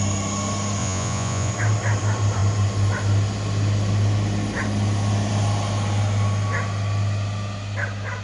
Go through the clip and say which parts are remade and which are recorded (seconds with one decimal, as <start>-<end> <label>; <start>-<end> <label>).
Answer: 0.0-0.8 recorded; 0.8-1.5 remade; 1.5-8.2 recorded